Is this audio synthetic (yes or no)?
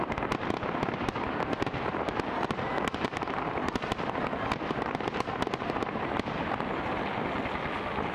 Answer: no